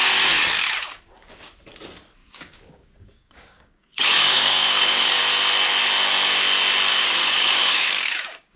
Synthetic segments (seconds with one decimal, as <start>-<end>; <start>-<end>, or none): 2.2-5.2; 6.9-8.6